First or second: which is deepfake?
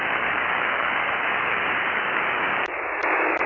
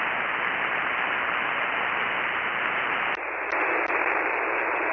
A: first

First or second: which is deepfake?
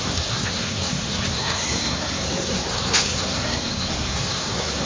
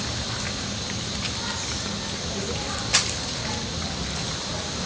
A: first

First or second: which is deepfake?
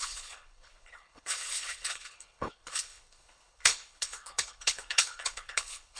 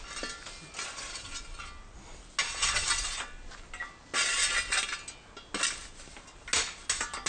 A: first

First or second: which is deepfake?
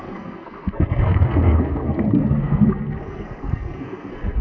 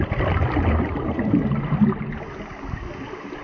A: first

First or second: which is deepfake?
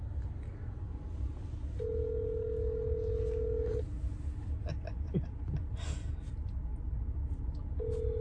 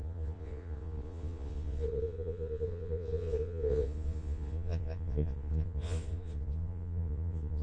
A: second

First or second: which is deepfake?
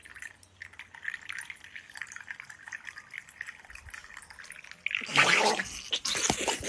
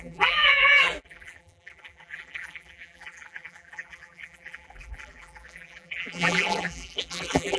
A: second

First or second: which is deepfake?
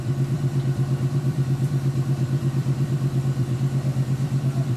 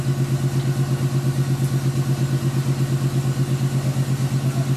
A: first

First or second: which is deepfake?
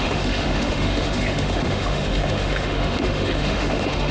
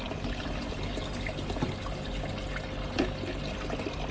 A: first